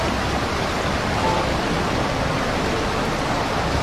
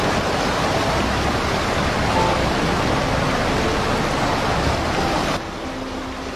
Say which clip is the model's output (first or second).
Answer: first